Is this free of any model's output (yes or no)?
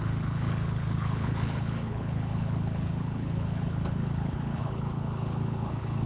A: no